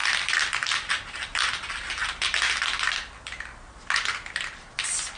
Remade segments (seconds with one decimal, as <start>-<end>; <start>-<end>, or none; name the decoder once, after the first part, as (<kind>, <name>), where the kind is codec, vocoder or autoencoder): none